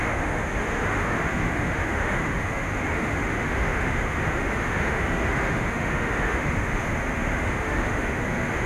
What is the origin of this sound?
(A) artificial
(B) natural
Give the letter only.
A